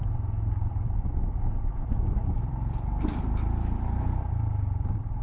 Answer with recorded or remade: remade